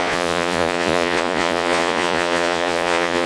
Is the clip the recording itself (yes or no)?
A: no